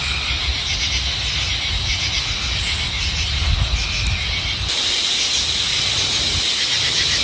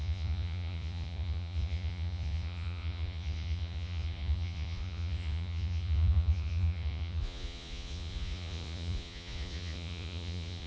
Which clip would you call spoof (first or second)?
second